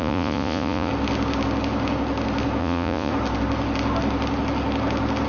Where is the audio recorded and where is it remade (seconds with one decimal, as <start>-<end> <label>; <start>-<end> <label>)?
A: 0.0-0.9 remade; 0.9-2.6 recorded; 2.6-3.1 remade; 3.1-5.3 recorded

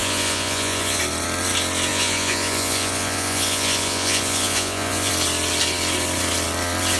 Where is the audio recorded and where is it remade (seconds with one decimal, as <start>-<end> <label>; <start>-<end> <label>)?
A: 0.0-1.0 remade; 1.0-1.9 recorded; 1.9-5.1 remade; 5.1-7.0 recorded

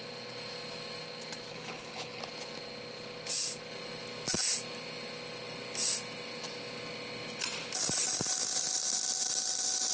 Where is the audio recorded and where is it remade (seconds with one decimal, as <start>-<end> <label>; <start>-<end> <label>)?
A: 0.0-1.5 recorded; 1.5-2.2 remade; 2.2-9.9 recorded

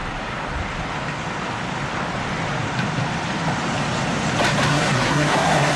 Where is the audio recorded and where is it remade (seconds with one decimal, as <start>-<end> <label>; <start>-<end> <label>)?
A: 0.0-4.7 recorded; 4.7-5.8 remade

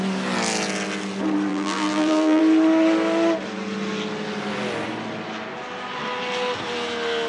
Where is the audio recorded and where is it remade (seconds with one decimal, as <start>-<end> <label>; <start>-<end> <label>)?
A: 0.0-1.5 recorded; 1.5-2.4 remade; 2.4-7.3 recorded

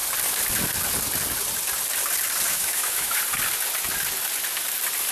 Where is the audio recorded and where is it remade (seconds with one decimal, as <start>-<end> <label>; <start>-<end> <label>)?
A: 0.0-2.5 recorded; 2.5-3.2 remade; 3.2-5.1 recorded

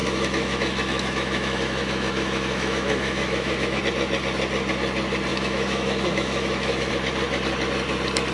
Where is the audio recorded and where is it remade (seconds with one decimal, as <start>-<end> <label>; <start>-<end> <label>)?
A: 0.0-3.8 remade; 3.8-5.3 recorded; 5.3-6.9 remade; 6.9-8.3 recorded